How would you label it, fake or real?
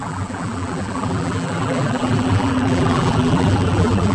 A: fake